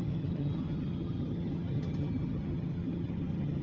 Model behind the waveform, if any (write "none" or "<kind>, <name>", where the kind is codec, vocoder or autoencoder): vocoder, HiFi-GAN